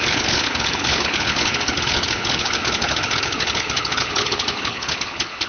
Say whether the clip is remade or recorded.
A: remade